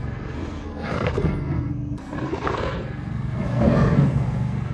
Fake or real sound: fake